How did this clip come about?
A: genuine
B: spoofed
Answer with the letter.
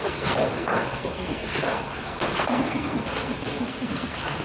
B